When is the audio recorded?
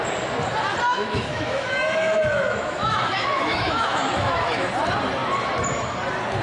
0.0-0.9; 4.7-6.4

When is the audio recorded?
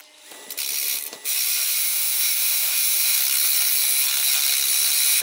0.0-1.8; 3.2-5.2